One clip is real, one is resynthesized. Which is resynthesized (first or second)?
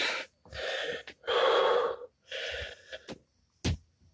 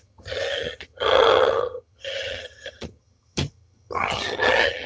second